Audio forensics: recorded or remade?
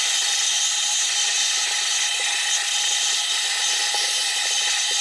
recorded